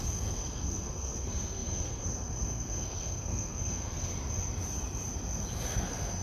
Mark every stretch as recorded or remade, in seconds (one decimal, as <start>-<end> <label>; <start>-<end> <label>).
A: 0.0-4.1 remade; 4.1-5.8 recorded; 5.8-6.2 remade